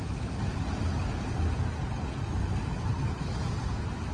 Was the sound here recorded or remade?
recorded